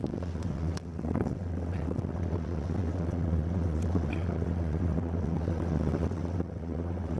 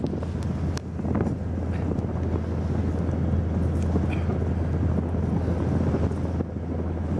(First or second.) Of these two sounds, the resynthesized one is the first